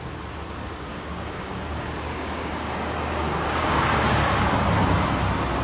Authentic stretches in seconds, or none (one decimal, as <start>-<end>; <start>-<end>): 0.0-0.9; 4.3-5.6